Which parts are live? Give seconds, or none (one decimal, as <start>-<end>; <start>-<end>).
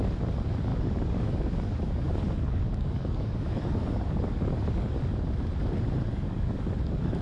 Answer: 0.0-0.7; 5.0-6.1